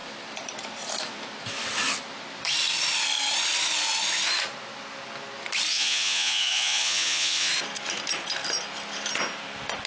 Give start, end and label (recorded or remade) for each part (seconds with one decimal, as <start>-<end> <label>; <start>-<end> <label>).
0.0-5.7 recorded; 5.7-7.5 remade; 7.5-9.9 recorded